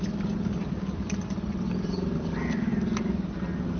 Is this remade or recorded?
recorded